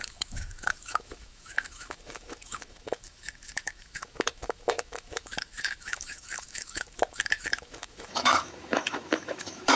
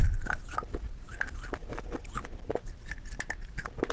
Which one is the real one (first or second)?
second